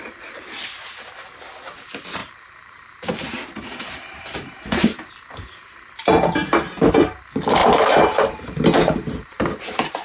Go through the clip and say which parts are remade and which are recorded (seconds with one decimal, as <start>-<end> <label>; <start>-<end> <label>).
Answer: 0.0-2.2 recorded; 2.2-6.0 remade; 6.0-7.6 recorded; 7.6-10.0 remade